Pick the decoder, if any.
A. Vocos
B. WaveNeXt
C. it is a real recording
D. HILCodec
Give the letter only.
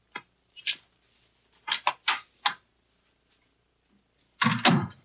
C